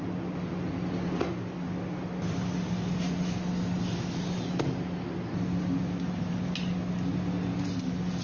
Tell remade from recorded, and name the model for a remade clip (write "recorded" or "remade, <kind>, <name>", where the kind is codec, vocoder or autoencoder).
recorded